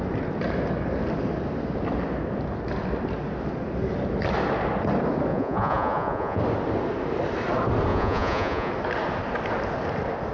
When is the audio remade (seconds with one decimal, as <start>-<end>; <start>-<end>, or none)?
5.3-6.4; 7.9-8.7